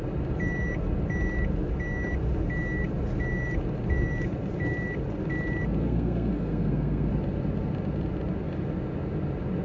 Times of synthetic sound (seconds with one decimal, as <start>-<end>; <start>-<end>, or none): 5.8-7.1